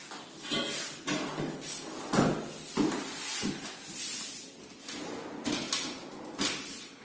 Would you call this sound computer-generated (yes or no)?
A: no